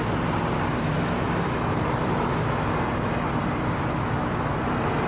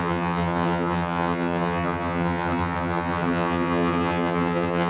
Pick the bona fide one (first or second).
first